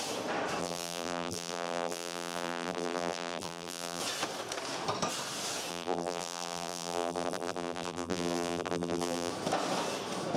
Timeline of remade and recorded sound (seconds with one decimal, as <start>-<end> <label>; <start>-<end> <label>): 0.0-0.6 recorded; 0.6-4.0 remade; 4.0-5.7 recorded; 5.7-9.3 remade; 9.3-10.4 recorded